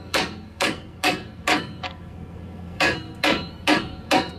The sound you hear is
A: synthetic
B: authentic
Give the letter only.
A